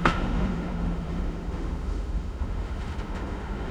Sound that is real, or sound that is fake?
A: fake